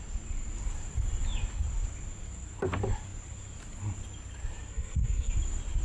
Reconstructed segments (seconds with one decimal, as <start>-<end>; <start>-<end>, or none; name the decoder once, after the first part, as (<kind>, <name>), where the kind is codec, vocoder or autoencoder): 4.7-5.3 (codec, SNAC)